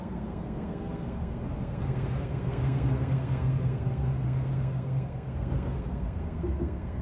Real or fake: fake